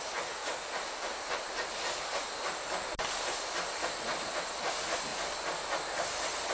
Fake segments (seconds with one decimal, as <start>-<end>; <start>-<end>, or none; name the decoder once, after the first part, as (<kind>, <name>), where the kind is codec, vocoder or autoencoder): 0.4-1.3 (vocoder, BigVGAN v2)